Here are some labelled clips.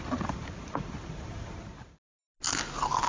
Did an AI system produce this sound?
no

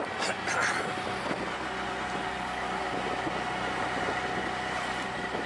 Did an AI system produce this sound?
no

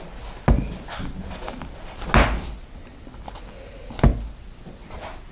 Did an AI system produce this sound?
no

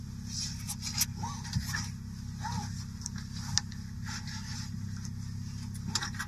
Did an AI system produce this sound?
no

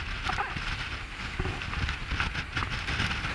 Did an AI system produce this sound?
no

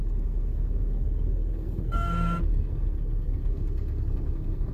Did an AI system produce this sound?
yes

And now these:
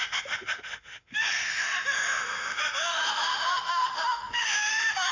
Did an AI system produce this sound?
yes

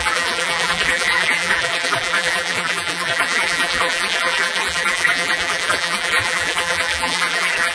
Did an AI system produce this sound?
yes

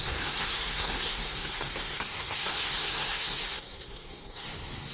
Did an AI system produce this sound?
yes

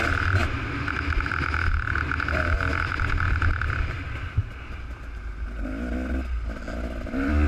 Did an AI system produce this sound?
no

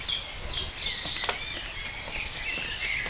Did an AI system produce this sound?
no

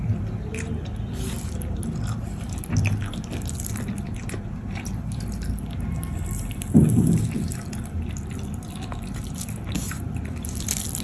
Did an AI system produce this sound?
yes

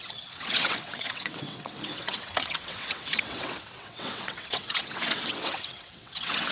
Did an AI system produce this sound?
yes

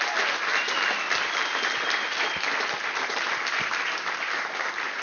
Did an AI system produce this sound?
no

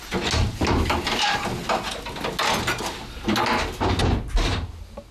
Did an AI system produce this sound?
no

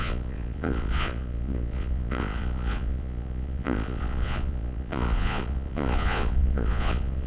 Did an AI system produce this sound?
yes